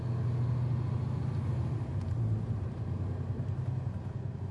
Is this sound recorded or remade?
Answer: recorded